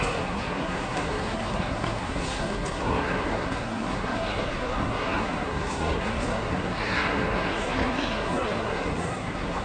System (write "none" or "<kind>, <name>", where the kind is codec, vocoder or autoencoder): codec, SNAC